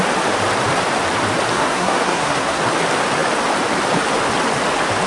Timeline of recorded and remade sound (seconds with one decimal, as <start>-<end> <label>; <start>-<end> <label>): 0.0-1.5 recorded; 1.5-2.6 remade; 2.6-5.1 recorded